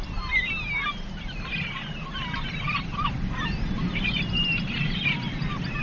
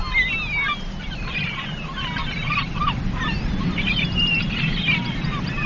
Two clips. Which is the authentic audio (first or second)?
second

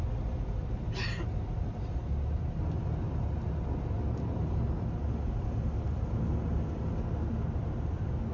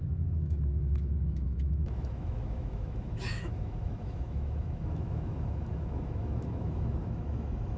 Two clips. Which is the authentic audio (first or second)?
first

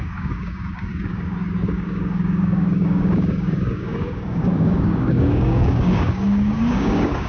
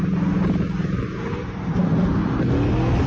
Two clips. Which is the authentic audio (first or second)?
second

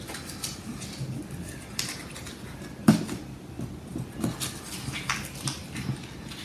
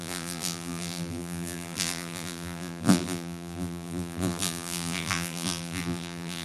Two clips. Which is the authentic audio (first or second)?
first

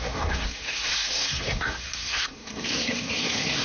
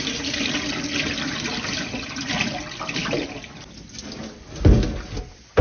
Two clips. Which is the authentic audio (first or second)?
second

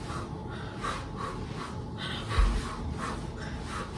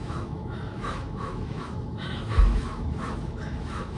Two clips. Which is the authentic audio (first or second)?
first